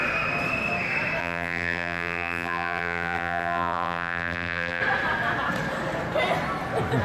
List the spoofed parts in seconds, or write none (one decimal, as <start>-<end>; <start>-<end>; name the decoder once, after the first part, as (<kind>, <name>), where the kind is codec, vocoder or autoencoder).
1.2-4.8 (vocoder, BigVGAN v2)